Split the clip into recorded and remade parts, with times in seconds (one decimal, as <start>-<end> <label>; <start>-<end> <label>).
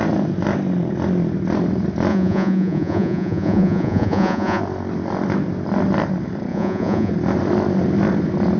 0.0-2.1 recorded; 2.1-4.6 remade; 4.6-6.5 recorded; 6.5-7.1 remade; 7.1-8.6 recorded